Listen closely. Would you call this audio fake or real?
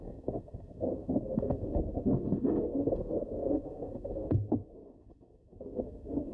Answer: fake